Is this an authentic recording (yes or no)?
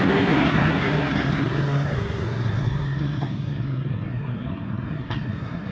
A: no